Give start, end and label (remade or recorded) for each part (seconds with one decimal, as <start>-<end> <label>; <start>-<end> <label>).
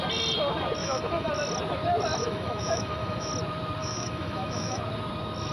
0.0-0.8 recorded; 0.8-1.3 remade; 1.3-2.2 recorded; 2.2-3.3 remade; 3.3-3.8 recorded; 3.8-4.8 remade; 4.8-5.5 recorded